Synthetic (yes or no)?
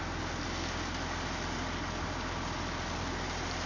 no